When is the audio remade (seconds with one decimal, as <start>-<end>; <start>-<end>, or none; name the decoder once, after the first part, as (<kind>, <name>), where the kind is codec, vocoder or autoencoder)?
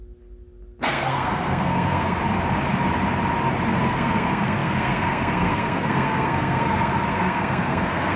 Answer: 0.9-2.2 (codec, SNAC); 3.8-8.2